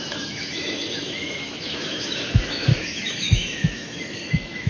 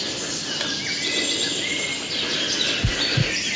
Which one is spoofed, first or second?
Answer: first